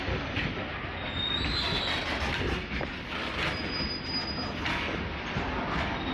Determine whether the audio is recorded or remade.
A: recorded